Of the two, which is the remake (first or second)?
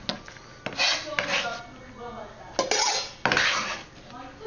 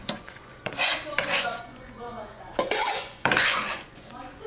second